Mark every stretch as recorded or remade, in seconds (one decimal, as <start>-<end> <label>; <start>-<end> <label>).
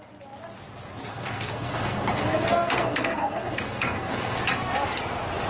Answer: 0.0-1.1 recorded; 1.1-4.4 remade; 4.4-5.5 recorded